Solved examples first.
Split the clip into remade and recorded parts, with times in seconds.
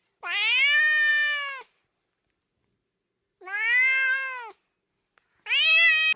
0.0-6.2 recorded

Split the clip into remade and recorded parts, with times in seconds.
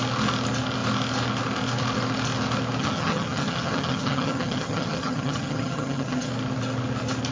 0.0-2.8 recorded; 2.8-6.3 remade; 6.3-7.3 recorded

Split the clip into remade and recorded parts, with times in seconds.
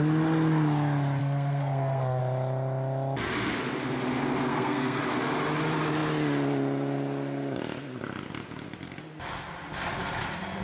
0.0-1.2 recorded; 1.2-2.2 remade; 2.2-4.5 recorded; 4.5-5.0 remade; 5.0-10.6 recorded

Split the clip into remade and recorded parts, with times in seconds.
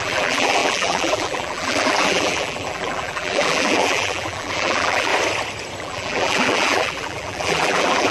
0.0-5.1 remade; 5.1-5.8 recorded; 5.8-8.1 remade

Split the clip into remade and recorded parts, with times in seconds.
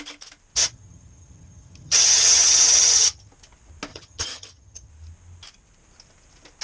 0.0-0.6 recorded; 0.6-3.3 remade; 3.3-3.9 recorded; 3.9-4.9 remade; 4.9-6.6 recorded